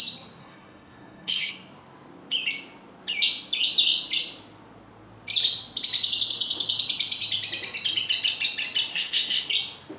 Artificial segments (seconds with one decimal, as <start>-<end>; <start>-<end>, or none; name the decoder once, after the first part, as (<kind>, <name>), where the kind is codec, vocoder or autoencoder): 0.4-1.5 (codec, SNAC); 8.9-9.5